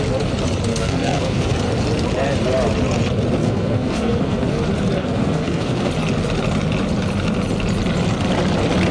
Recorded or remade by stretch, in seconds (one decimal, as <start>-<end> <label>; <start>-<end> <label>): 0.0-0.7 recorded; 0.7-1.6 remade; 1.6-3.4 recorded; 3.4-4.6 remade; 4.6-5.0 recorded; 5.0-5.9 remade; 5.9-8.9 recorded